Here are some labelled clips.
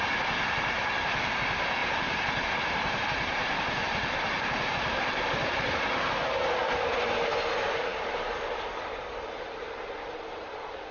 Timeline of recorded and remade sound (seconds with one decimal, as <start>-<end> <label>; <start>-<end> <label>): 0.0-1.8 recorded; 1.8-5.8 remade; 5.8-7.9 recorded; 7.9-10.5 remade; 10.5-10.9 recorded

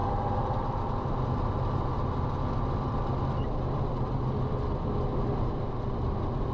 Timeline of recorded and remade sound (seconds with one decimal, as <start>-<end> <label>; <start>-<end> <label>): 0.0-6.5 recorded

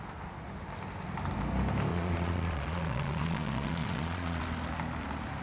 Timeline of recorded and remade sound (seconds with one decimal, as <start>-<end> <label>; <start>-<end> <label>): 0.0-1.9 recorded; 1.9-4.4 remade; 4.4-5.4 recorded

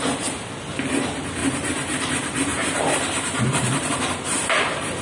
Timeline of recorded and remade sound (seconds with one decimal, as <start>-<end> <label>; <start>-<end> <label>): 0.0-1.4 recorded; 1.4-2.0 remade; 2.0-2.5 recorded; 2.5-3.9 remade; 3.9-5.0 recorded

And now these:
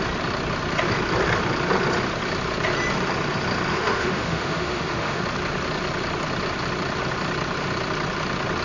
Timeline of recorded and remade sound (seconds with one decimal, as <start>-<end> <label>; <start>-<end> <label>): 0.0-3.7 recorded; 3.7-5.2 remade; 5.2-8.6 recorded